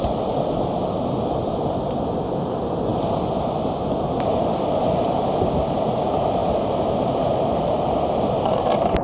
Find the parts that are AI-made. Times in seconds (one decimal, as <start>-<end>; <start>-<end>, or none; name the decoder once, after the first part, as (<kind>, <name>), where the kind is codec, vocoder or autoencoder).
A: none